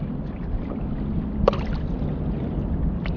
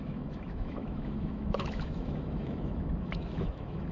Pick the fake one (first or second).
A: second